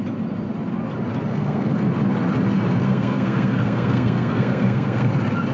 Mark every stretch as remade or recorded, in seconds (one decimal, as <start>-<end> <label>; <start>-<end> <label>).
0.0-1.3 recorded; 1.3-1.8 remade; 1.8-2.8 recorded; 2.8-5.1 remade; 5.1-5.5 recorded